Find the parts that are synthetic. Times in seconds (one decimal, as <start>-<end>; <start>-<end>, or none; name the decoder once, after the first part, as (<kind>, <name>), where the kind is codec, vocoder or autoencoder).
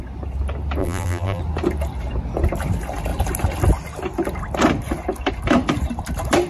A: 0.8-1.4 (vocoder, BigVGAN v2)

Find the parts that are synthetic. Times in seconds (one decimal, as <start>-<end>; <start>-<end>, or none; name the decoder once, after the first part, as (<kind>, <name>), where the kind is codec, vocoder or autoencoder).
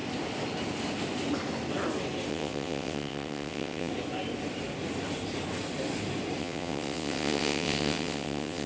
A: 2.3-3.9 (vocoder, WaveNeXt); 6.4-8.7